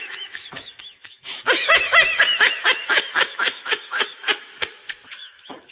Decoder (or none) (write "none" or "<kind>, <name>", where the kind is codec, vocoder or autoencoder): autoencoder, DAC-VAE